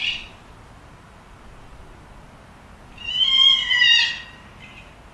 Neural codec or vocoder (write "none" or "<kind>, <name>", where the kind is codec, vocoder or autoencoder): none